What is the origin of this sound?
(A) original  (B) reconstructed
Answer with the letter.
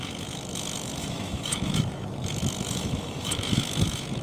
B